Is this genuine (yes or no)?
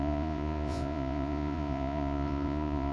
no